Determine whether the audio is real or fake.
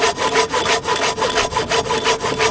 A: real